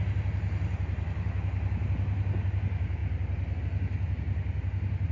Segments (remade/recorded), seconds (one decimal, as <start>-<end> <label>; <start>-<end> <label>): 0.0-5.1 recorded